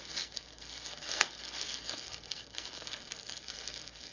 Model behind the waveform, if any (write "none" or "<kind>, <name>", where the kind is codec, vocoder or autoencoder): codec, SNAC